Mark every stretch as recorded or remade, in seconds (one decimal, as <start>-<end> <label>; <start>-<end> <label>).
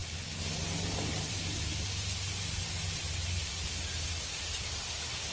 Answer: 0.0-5.3 recorded